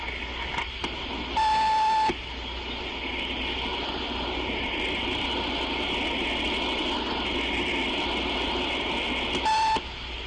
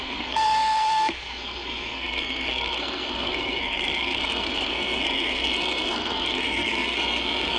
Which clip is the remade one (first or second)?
second